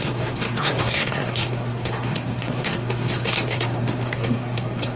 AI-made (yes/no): yes